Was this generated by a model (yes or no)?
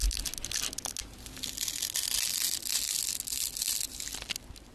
no